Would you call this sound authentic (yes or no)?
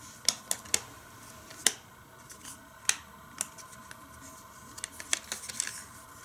yes